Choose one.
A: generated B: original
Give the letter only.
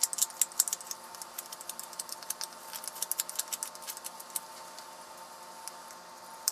B